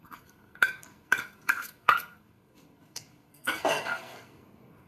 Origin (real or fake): fake